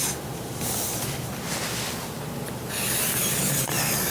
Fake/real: real